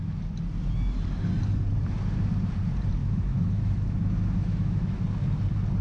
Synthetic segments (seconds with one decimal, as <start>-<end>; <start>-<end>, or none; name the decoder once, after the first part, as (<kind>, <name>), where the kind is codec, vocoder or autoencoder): 3.0-5.0 (autoencoder, DAC-VAE)